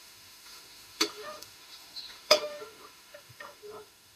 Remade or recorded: remade